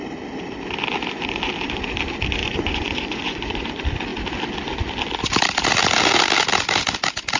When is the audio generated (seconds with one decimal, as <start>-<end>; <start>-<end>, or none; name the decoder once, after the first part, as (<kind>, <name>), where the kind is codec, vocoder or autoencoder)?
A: 2.4-3.6 (vocoder, Vocos)